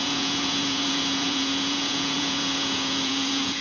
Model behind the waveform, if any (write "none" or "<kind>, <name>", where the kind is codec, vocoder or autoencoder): vocoder, Vocos